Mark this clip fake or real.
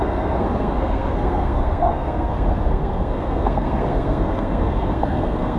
fake